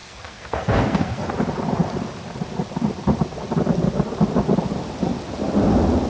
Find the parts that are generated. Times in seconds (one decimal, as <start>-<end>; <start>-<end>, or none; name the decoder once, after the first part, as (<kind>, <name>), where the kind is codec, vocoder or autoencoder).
0.0-1.3 (codec, SNAC)